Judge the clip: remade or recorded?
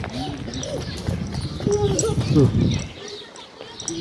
recorded